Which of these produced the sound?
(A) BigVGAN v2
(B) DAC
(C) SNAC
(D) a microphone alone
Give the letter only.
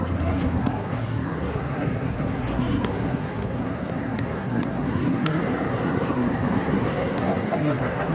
C